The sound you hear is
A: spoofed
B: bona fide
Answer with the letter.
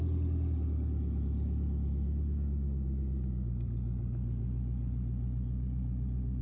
B